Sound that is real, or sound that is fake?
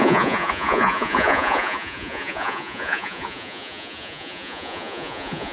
fake